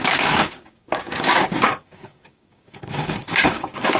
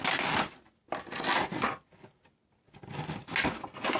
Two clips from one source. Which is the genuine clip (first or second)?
second